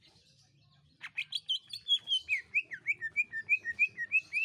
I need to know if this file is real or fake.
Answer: real